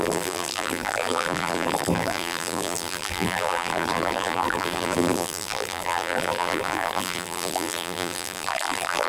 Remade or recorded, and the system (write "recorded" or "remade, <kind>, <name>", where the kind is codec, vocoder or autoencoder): remade, vocoder, BigVGAN v2